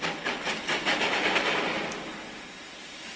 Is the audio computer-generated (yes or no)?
no